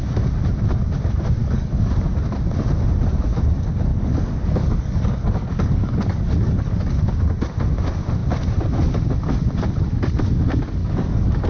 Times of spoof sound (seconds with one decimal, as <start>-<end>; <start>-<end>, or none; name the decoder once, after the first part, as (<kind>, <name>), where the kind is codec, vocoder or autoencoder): 1.4-1.9 (codec, DAC); 3.9-7.2; 10.8-11.5